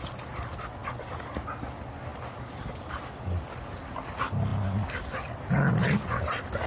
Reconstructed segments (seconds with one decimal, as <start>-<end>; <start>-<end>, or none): none